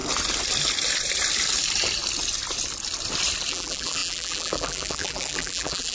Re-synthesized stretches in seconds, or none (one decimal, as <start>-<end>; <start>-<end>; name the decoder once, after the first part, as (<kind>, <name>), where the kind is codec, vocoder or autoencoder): 3.5-5.9 (vocoder, BigVGAN v2)